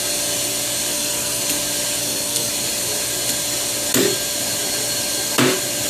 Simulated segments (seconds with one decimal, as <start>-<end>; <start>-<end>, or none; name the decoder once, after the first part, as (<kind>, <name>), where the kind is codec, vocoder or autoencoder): 0.9-1.4 (codec, SNAC); 2.0-2.5